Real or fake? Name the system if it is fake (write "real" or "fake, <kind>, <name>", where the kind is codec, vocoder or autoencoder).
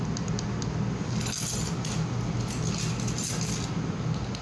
real